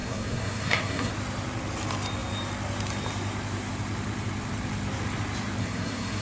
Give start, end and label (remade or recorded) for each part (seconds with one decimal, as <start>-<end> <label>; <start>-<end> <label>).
0.0-1.1 remade; 1.1-5.6 recorded; 5.6-6.2 remade